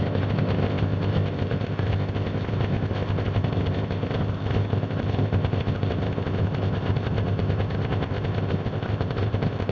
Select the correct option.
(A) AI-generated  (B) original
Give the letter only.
A